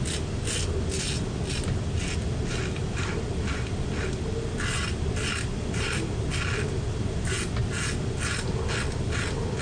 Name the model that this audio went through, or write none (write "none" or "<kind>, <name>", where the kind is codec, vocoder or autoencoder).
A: none